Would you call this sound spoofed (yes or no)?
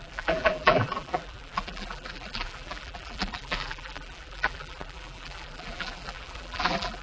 yes